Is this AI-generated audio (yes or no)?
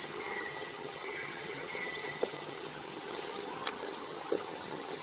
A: yes